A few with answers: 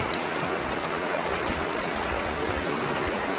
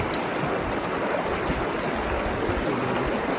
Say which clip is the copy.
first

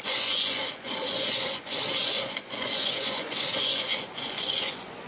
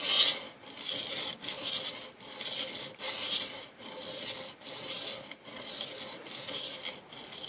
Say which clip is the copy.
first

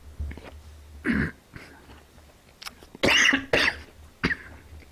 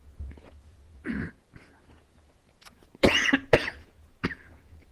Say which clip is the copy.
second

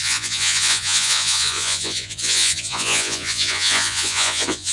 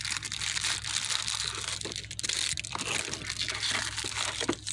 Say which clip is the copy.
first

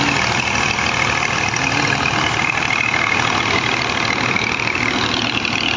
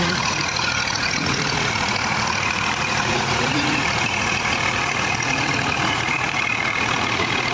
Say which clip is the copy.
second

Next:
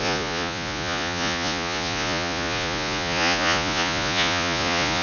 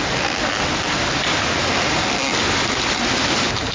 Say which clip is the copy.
first